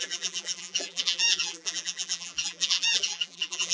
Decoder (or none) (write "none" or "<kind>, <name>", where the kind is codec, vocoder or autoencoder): vocoder, BigVGAN v2